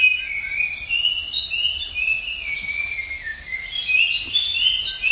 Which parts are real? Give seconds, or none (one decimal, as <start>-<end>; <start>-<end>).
0.0-5.1

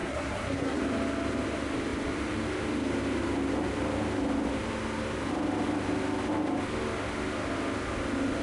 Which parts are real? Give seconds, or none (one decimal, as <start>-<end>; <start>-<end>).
0.8-8.4